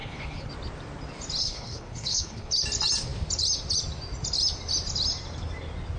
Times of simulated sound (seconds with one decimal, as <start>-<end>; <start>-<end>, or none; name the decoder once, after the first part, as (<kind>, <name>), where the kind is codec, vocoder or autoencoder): 0.0-0.5 (codec, HILCodec); 1.4-2.5